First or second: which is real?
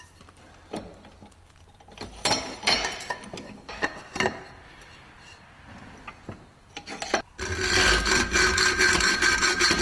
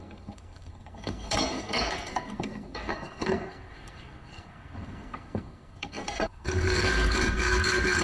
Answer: first